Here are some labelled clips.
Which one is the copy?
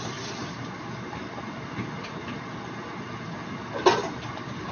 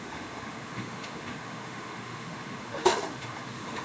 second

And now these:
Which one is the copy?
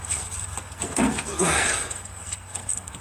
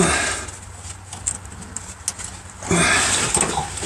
first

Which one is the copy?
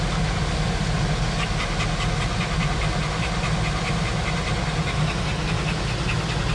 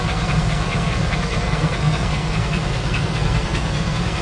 second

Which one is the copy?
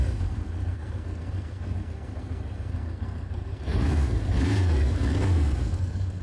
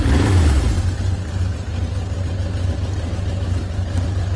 first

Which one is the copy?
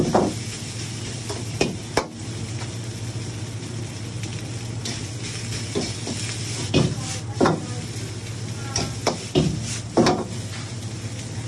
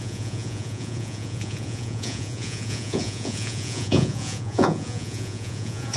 second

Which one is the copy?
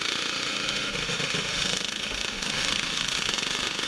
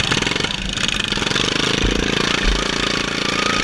first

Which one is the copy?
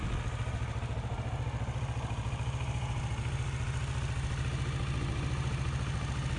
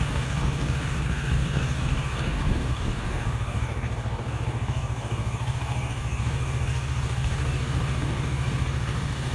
second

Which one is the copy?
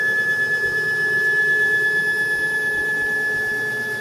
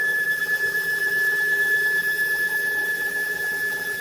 second